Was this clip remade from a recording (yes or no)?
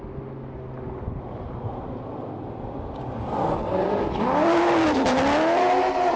no